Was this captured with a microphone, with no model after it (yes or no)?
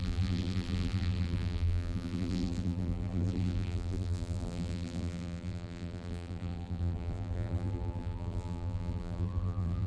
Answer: no